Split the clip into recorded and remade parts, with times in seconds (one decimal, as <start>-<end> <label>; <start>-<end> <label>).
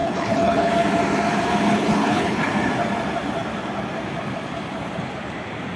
0.0-0.7 remade; 0.7-1.7 recorded; 1.7-2.5 remade; 2.5-5.8 recorded